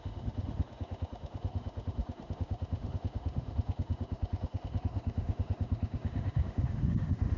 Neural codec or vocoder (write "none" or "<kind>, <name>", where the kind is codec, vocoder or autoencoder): autoencoder, DAC-VAE